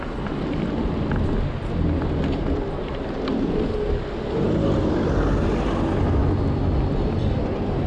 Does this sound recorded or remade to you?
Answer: recorded